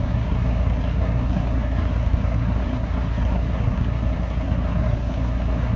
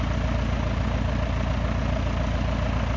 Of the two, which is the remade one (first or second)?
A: first